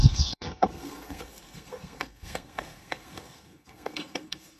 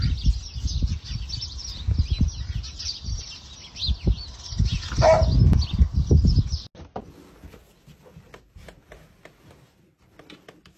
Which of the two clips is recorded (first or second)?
second